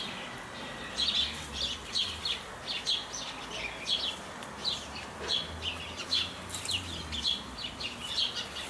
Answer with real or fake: real